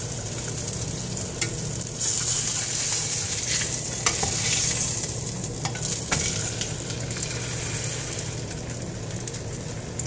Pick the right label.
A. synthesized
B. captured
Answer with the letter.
B